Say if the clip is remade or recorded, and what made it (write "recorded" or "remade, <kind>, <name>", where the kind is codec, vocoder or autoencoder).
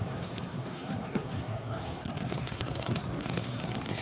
remade, codec, SNAC